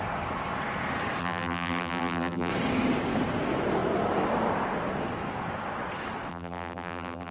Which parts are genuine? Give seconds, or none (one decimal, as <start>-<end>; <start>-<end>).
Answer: 0.0-1.2; 2.5-6.3